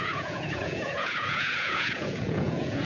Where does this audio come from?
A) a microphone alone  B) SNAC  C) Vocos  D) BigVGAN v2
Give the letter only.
C